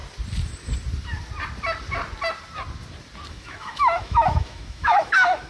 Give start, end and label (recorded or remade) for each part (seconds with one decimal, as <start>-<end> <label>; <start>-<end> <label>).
0.0-3.3 recorded; 3.3-5.5 remade